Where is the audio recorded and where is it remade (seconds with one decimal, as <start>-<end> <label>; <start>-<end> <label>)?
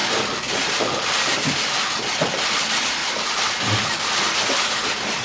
0.0-5.2 recorded